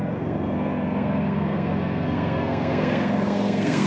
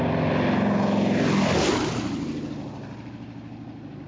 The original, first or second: second